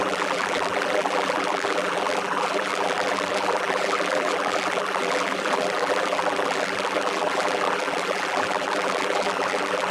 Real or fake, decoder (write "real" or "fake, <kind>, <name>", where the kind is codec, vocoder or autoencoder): fake, vocoder, BigVGAN v2